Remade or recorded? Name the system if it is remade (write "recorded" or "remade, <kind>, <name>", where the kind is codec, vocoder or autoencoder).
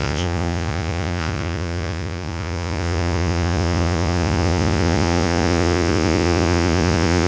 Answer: remade, vocoder, Vocos